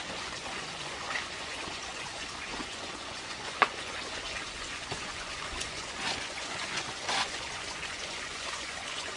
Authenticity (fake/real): fake